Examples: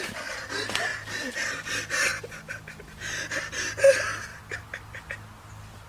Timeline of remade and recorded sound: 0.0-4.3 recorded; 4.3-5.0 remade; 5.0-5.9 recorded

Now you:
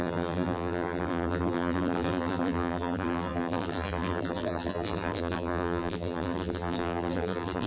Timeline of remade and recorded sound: 0.0-7.7 remade

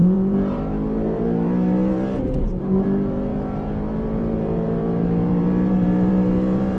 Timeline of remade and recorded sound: 0.0-6.8 remade

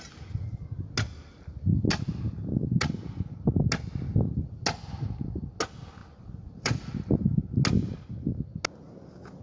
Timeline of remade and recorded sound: 0.0-6.0 recorded; 6.0-6.8 remade; 6.8-9.4 recorded

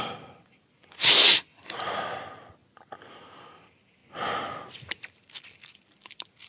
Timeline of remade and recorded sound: 0.0-4.0 remade; 4.0-4.7 recorded; 4.7-6.5 remade

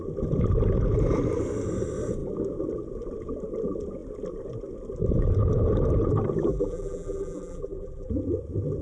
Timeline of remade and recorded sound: 0.0-6.5 recorded; 6.5-8.1 remade; 8.1-8.8 recorded

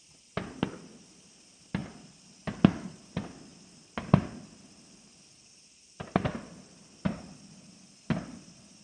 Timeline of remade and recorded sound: 0.0-8.8 recorded